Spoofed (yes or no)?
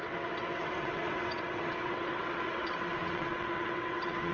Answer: yes